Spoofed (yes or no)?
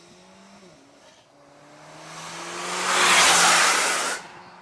no